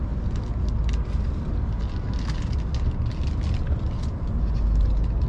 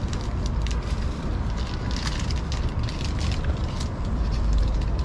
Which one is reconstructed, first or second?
second